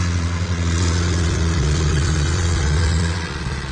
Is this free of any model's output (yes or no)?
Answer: no